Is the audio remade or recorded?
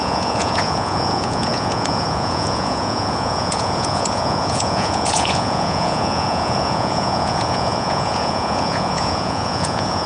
remade